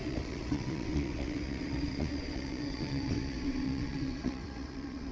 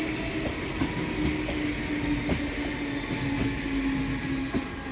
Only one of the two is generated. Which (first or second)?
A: first